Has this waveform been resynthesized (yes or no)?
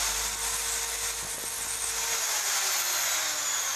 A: no